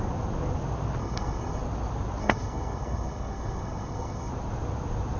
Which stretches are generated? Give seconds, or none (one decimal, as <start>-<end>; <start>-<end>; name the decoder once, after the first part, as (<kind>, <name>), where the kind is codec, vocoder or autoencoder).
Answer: 1.0-1.6 (codec, SNAC); 2.2-4.3